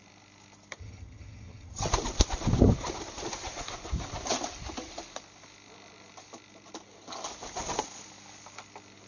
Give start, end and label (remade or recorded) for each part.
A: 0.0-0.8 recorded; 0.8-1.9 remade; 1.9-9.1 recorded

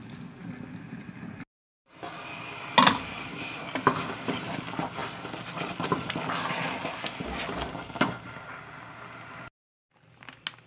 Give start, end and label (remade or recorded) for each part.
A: 0.0-10.7 recorded

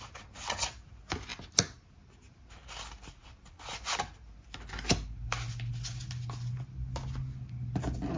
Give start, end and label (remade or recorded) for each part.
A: 0.0-8.2 recorded

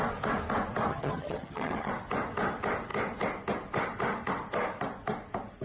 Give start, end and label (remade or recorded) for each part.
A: 0.0-0.9 recorded; 0.9-1.9 remade; 1.9-5.6 recorded

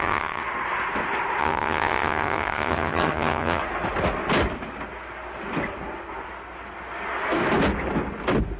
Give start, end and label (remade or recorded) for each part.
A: 0.0-0.4 remade; 0.4-1.4 recorded; 1.4-3.6 remade; 3.6-8.6 recorded

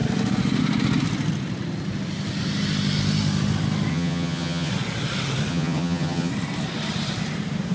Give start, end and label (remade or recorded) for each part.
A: 0.0-3.9 recorded; 3.9-4.7 remade; 4.7-5.5 recorded; 5.5-6.3 remade; 6.3-7.7 recorded

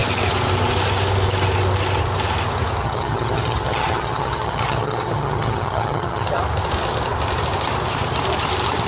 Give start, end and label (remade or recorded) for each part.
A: 0.0-2.8 recorded; 2.8-6.4 remade; 6.4-8.9 recorded